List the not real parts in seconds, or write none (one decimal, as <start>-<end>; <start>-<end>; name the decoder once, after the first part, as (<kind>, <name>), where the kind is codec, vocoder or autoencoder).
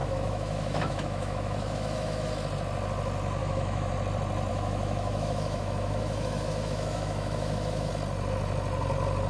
0.0-2.3 (autoencoder, DAC-VAE); 3.4-3.9; 4.5-7.9